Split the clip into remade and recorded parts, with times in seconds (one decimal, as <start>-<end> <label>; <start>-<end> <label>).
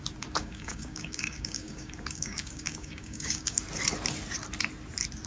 0.0-0.4 recorded; 0.4-3.6 remade; 3.6-5.3 recorded